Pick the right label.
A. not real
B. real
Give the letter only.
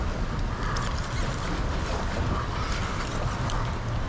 B